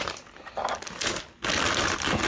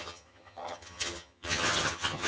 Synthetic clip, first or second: second